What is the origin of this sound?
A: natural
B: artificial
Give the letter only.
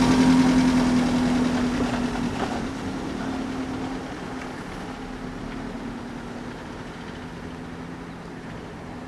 A